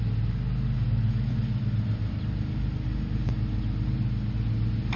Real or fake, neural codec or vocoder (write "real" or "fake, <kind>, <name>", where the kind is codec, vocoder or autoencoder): real